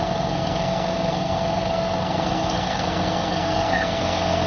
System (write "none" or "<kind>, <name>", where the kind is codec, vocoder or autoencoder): codec, SNAC